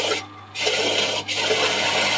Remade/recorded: recorded